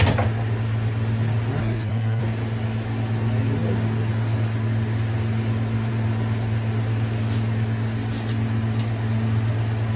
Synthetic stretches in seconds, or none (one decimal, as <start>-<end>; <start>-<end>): 1.6-2.2